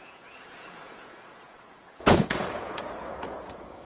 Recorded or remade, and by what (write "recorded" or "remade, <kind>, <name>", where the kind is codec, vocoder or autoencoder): remade, vocoder, Vocos